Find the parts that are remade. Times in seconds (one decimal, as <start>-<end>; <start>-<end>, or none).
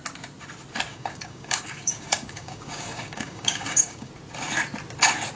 0.9-4.1